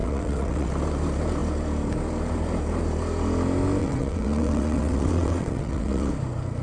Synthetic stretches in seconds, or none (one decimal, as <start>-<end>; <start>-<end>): 0.0-0.7; 3.8-6.1